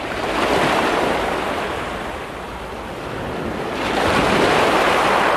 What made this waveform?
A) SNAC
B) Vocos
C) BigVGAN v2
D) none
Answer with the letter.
D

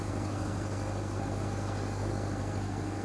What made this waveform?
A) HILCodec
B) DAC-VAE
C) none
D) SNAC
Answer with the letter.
D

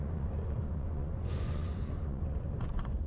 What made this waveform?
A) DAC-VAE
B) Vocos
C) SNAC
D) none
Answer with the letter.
B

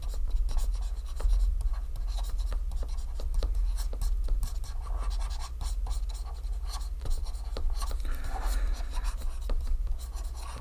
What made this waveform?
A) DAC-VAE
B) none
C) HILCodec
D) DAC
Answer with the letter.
B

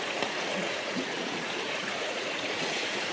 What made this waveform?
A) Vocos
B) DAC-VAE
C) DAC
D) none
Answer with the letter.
A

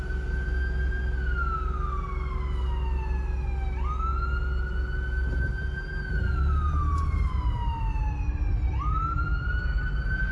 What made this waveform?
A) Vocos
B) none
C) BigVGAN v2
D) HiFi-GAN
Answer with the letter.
B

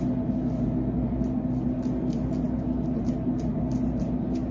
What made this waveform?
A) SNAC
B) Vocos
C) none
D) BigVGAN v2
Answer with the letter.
C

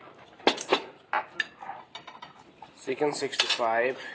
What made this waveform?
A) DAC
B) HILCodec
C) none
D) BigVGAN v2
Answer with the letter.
C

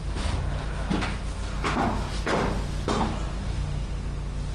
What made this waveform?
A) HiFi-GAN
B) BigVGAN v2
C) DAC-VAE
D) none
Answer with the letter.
D